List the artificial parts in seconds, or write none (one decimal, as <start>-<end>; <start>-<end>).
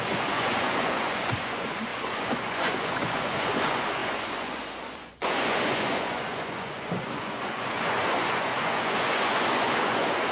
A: 0.0-10.3